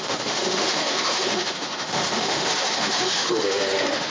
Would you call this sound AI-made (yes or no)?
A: yes